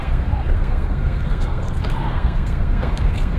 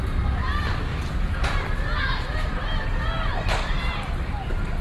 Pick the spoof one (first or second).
first